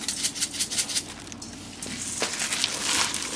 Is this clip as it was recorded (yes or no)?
yes